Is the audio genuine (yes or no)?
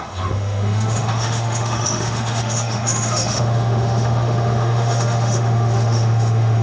no